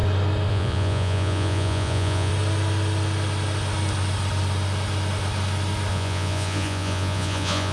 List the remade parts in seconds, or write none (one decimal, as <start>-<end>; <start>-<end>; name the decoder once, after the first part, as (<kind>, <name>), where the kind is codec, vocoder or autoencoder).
0.5-2.3 (vocoder, Vocos); 5.9-7.7